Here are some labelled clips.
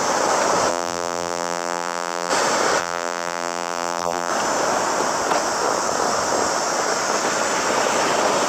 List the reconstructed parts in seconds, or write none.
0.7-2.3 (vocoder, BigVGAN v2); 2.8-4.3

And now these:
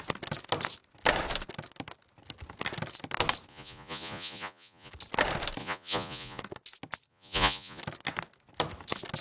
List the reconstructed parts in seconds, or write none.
3.5-4.9 (vocoder, Vocos); 5.6-6.4; 7.1-7.8

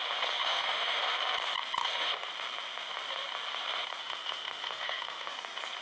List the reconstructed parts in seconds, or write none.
0.4-1.0 (autoencoder, DAC-VAE); 1.8-2.3; 4.0-5.3